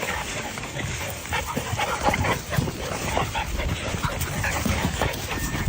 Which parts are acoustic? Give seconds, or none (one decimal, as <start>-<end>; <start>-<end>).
1.2-4.6